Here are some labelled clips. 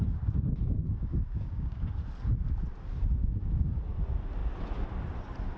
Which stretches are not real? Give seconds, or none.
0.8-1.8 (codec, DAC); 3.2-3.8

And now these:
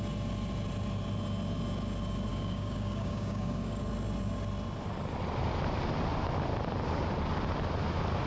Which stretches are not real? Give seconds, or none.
2.3-3.8 (codec, DAC)

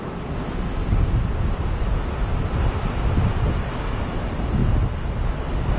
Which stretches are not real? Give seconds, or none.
none

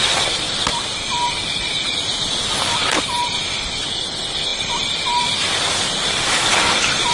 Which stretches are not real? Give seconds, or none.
4.5-5.0 (vocoder, BigVGAN v2)

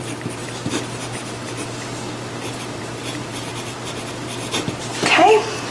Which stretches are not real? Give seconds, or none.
0.0-0.4 (vocoder, BigVGAN v2); 2.8-5.7